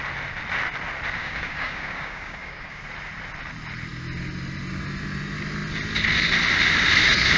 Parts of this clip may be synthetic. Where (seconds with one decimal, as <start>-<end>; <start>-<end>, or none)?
1.2-2.8